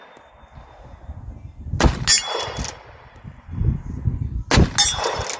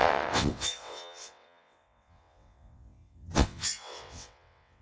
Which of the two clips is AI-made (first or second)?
second